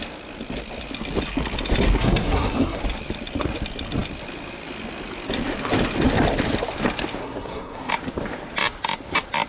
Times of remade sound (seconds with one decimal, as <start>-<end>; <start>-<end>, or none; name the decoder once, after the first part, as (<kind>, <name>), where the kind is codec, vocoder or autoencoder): 2.0-2.8 (codec, SNAC); 7.2-7.9